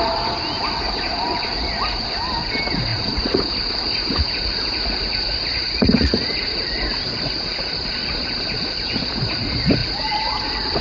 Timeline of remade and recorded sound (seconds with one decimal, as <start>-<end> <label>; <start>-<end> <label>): 0.0-2.9 recorded; 2.9-3.5 remade; 3.5-5.5 recorded; 5.5-6.7 remade; 6.7-9.8 recorded; 9.8-10.4 remade; 10.4-10.8 recorded